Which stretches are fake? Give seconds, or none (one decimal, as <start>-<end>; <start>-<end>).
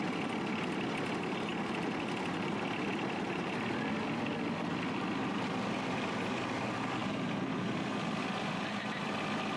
0.0-9.6